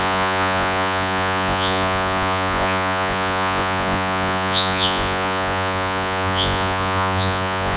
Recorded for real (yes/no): no